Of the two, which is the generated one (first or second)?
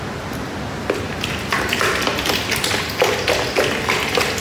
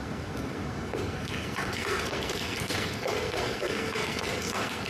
second